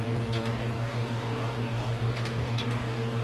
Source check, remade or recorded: remade